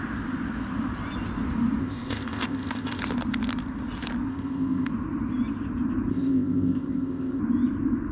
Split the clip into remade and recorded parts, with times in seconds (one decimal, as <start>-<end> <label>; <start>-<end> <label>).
0.0-1.8 recorded; 1.8-3.0 remade; 3.0-4.3 recorded; 4.3-4.9 remade; 4.9-6.1 recorded; 6.1-7.4 remade; 7.4-8.1 recorded